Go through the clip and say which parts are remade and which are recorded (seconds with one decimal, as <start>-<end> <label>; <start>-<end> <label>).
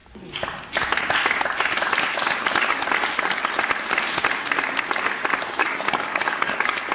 0.0-5.6 recorded; 5.6-6.9 remade